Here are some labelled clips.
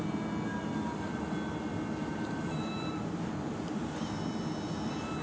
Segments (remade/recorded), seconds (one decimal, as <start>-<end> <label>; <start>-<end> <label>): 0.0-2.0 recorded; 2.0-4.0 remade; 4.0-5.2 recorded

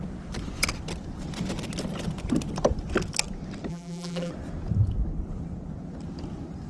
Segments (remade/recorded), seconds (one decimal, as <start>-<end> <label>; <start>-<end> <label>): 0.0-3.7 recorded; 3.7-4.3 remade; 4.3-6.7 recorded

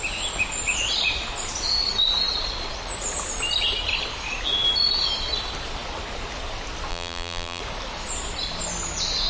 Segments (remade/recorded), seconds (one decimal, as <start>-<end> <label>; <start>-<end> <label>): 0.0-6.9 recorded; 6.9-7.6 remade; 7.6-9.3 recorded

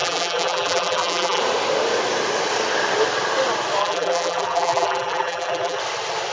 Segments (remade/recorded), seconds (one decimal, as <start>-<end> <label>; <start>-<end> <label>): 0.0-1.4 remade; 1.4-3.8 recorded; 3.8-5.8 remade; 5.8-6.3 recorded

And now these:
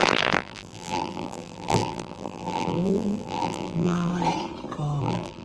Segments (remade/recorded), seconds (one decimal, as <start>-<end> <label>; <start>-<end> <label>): 0.0-4.1 remade; 4.1-5.0 recorded; 5.0-5.4 remade

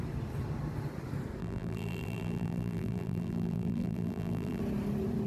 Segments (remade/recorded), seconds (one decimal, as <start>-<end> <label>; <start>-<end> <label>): 0.0-1.4 recorded; 1.4-4.6 remade; 4.6-5.3 recorded